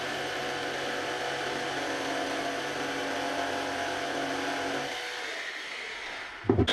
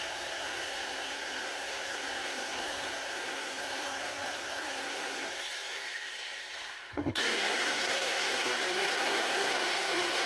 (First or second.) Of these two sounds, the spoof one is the second